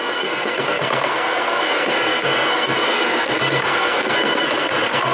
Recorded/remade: remade